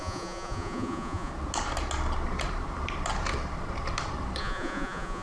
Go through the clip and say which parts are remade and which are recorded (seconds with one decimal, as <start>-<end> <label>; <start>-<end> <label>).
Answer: 0.0-1.3 remade; 1.3-4.4 recorded; 4.4-5.2 remade